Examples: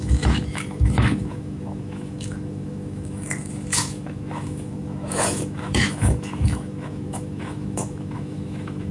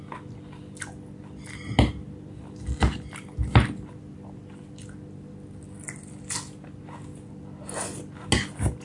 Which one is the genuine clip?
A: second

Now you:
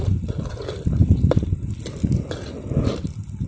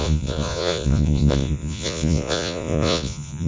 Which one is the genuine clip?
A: first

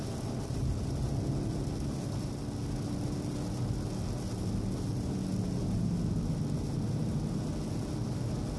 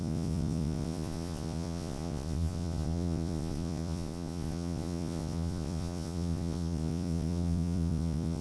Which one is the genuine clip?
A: first